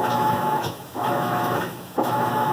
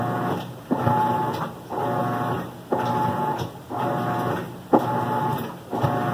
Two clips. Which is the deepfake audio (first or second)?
first